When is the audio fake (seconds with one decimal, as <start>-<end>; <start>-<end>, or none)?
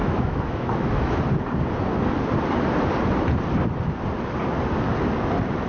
0.0-1.2